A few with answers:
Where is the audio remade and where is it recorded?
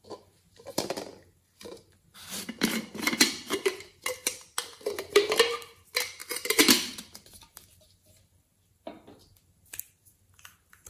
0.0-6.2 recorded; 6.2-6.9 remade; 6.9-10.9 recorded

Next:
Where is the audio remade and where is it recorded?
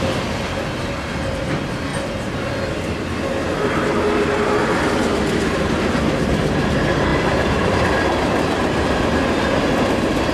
0.0-1.9 recorded; 1.9-2.4 remade; 2.4-7.1 recorded; 7.1-7.7 remade; 7.7-10.3 recorded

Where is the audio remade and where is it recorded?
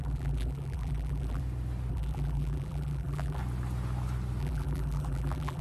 0.0-1.4 remade; 1.4-1.9 recorded; 1.9-3.4 remade; 3.4-4.4 recorded; 4.4-5.6 remade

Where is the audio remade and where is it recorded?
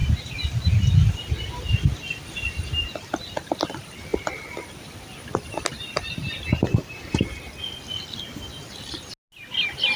0.0-1.3 remade; 1.3-10.0 recorded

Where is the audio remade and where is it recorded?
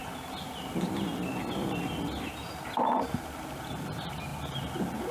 0.0-1.3 remade; 1.3-5.1 recorded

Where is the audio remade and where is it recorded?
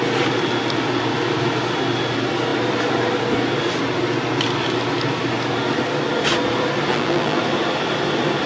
0.0-6.9 recorded; 6.9-7.4 remade; 7.4-8.5 recorded